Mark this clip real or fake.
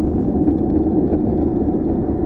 real